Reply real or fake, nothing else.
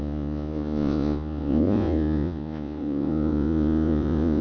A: fake